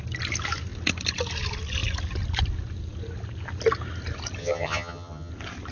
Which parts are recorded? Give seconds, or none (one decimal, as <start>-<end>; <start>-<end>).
0.0-4.4; 5.3-5.7